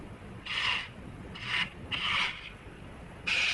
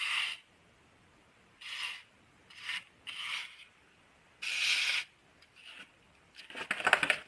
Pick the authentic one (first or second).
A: second